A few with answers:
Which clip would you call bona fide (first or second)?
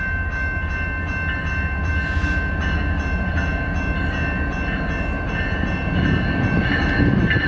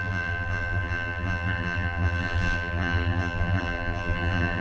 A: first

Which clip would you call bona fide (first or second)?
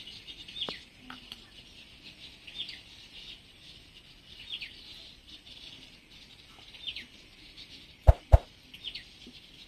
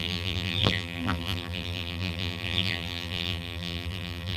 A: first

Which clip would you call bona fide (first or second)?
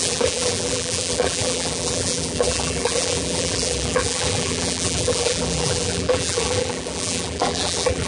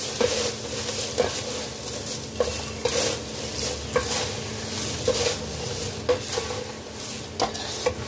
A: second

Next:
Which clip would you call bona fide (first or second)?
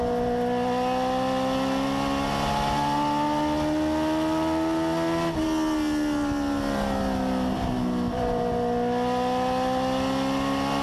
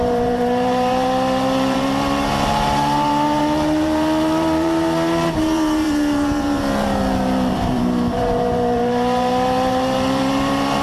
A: first